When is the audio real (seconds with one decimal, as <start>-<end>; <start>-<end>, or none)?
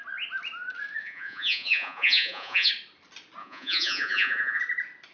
0.0-1.0; 2.7-3.4; 4.6-5.1